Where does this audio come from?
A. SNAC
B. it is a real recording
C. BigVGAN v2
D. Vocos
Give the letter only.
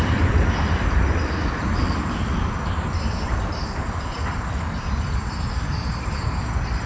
B